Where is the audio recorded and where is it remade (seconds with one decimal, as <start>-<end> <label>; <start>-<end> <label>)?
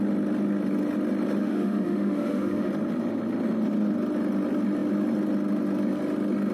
0.0-1.4 recorded; 1.4-2.7 remade; 2.7-6.5 recorded